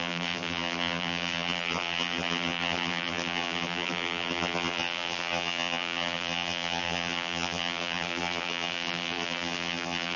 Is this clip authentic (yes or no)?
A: no